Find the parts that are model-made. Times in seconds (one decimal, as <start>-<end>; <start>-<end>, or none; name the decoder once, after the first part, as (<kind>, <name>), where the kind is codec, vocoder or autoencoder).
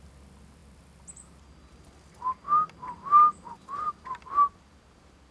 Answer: none